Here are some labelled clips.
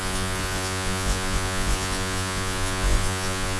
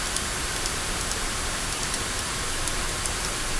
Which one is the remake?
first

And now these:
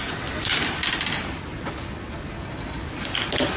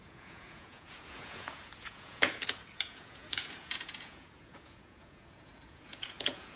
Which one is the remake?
second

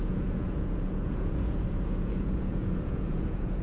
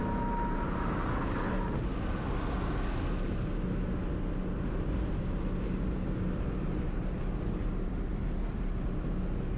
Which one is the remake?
first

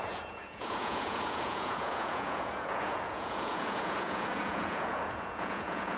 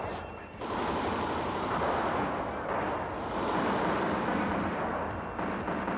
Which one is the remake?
first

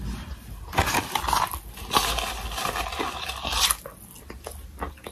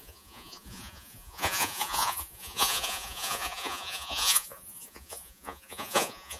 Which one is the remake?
second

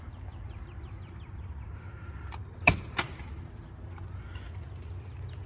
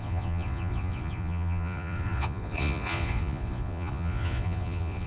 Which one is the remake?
second